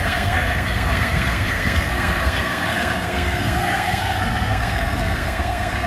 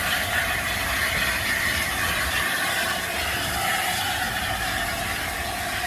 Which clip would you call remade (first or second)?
first